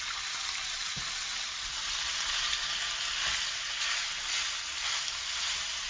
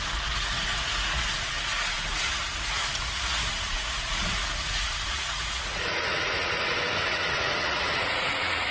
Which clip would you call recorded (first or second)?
first